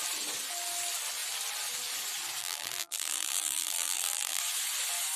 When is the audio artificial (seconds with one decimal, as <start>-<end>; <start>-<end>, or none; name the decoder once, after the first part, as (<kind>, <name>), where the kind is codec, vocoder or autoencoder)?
2.4-4.4 (vocoder, BigVGAN v2)